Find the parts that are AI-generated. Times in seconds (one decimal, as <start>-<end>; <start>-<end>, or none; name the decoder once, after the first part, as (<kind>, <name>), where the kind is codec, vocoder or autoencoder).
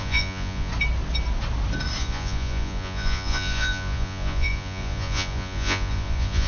0.0-0.7 (vocoder, Vocos); 2.0-6.5